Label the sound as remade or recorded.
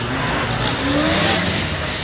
recorded